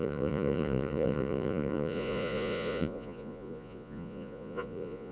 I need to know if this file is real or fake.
fake